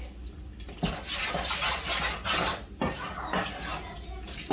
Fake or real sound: real